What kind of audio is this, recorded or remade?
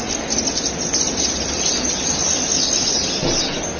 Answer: recorded